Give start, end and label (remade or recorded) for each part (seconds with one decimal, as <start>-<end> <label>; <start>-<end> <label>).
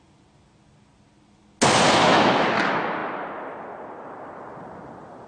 0.0-5.3 recorded